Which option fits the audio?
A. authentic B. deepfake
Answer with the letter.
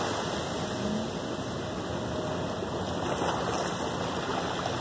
A